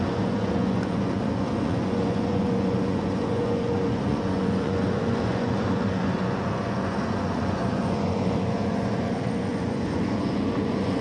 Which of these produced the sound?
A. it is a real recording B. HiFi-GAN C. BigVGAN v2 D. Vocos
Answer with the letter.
D